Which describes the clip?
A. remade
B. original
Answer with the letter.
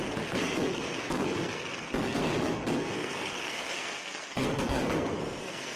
A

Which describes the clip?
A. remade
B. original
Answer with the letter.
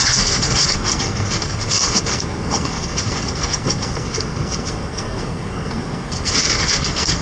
A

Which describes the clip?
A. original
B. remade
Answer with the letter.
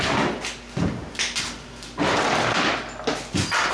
A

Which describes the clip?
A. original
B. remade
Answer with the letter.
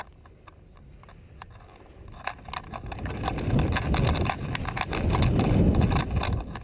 A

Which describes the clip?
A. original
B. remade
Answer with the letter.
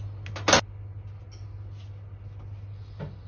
A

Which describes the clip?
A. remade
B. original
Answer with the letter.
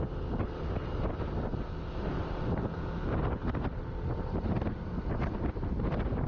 B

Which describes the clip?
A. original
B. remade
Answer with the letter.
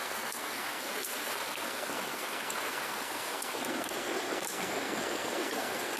B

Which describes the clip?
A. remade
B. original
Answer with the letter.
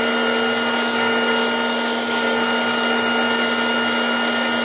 B